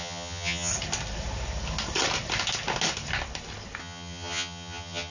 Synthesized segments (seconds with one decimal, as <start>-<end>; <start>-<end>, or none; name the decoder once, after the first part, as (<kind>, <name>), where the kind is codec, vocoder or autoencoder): 0.0-0.7 (vocoder, HiFi-GAN); 3.8-5.1